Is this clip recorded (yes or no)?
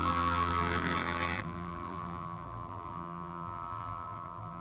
no